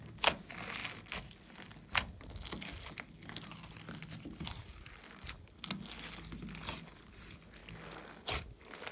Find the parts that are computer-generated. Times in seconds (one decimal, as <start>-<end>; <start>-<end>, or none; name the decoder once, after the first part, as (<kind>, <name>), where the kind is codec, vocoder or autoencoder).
none